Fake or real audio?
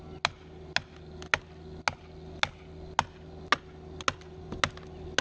real